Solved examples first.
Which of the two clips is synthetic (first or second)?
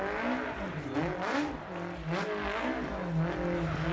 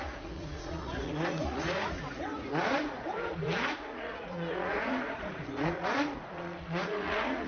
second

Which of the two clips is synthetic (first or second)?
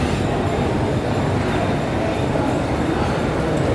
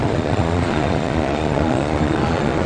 second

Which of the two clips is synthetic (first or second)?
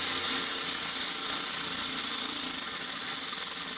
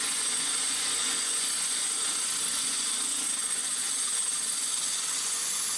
second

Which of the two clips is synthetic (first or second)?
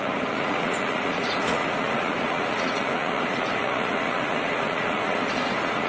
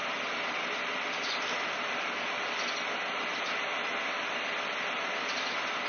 first